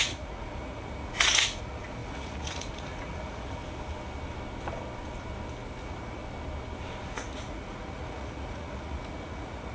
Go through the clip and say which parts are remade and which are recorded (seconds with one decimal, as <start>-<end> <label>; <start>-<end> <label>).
0.0-3.6 remade; 3.6-5.8 recorded; 5.8-6.2 remade; 6.2-7.0 recorded; 7.0-9.7 remade